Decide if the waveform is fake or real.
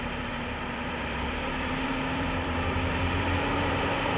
fake